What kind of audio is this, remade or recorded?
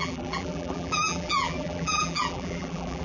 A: remade